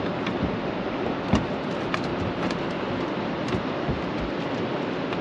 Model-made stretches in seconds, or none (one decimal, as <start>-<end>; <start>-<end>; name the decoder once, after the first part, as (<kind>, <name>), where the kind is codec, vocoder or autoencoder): none